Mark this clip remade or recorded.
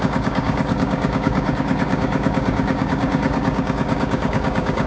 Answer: remade